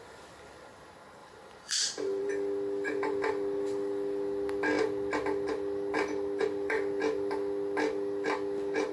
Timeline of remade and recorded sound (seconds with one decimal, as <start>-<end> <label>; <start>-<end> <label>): 0.0-1.2 recorded; 1.2-2.3 remade; 2.3-8.9 recorded